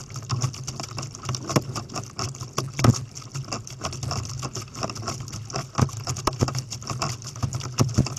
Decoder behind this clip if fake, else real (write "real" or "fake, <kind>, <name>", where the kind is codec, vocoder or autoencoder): real